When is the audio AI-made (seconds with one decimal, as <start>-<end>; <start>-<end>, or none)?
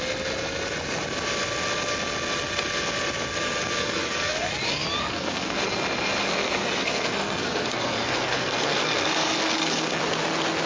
3.8-4.5; 5.0-5.6; 6.2-10.0